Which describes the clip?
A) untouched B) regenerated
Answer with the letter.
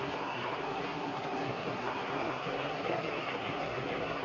B